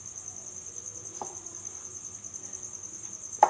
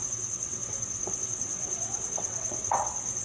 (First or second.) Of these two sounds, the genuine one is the first